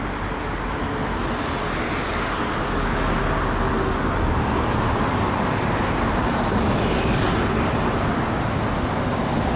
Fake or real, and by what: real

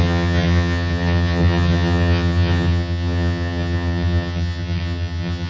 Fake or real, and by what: fake, vocoder, HiFi-GAN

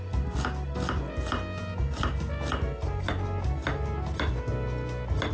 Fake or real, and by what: real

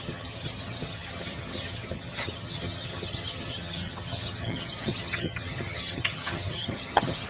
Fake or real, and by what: fake, vocoder, HiFi-GAN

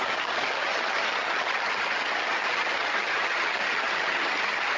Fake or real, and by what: fake, vocoder, HiFi-GAN